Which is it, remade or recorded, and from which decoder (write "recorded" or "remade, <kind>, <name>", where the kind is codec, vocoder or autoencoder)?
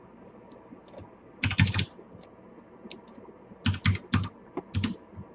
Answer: recorded